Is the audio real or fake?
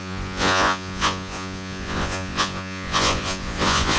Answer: fake